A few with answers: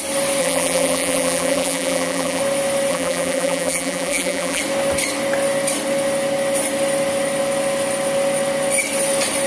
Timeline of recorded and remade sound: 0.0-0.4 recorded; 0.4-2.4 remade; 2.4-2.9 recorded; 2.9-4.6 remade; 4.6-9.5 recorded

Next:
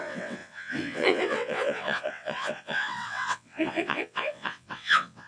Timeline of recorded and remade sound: 0.0-5.3 remade

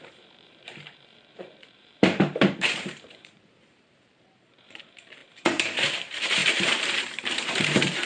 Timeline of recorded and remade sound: 0.0-8.1 remade